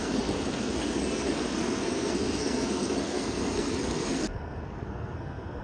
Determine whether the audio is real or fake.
fake